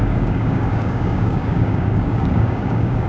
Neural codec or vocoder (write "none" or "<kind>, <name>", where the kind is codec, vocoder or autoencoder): codec, DAC